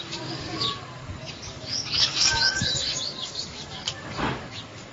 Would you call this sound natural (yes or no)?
no